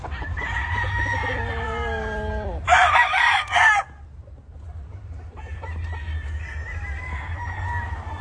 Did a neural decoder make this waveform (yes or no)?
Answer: no